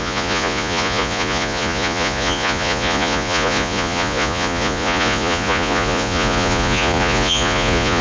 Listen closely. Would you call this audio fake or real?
fake